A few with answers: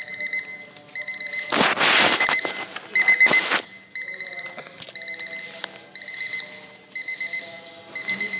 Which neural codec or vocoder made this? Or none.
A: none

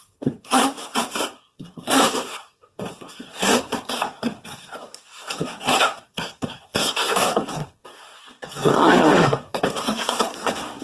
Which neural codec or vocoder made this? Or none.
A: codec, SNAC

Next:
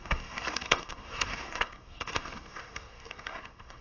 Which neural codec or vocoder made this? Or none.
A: codec, SNAC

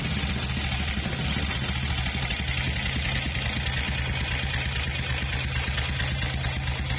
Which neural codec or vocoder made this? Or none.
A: none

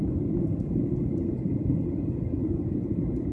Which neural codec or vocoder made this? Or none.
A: none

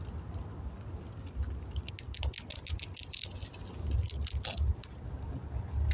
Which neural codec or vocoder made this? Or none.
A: none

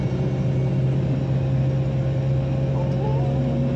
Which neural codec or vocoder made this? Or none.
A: none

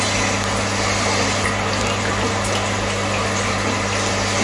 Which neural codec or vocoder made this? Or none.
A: none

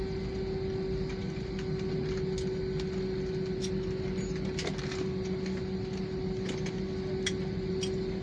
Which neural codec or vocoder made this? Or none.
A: none